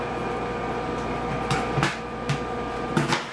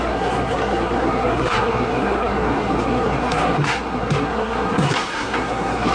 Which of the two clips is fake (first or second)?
second